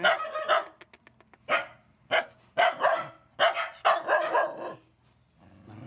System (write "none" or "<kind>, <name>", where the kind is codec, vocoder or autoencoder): none